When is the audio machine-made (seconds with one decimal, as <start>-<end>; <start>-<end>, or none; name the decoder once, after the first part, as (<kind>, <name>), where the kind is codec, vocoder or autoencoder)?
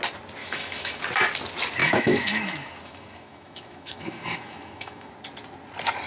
0.4-1.0 (autoencoder, DAC-VAE); 1.8-5.1